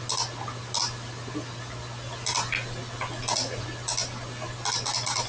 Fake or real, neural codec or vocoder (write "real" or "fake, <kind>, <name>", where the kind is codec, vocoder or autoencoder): real